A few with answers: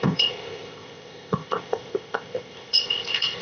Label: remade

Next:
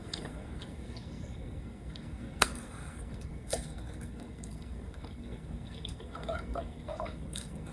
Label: remade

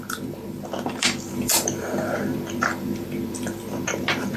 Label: remade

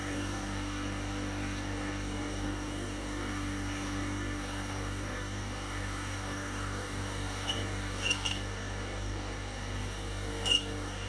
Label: remade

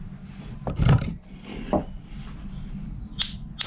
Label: recorded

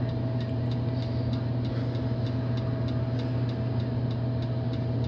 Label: recorded